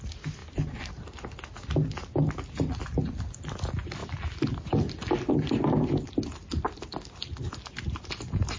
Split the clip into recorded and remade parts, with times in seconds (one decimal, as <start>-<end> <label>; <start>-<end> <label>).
0.0-8.6 recorded